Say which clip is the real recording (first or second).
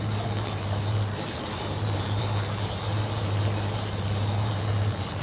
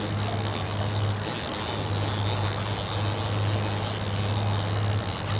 second